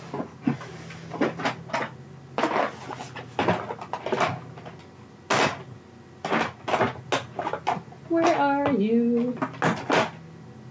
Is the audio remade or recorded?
recorded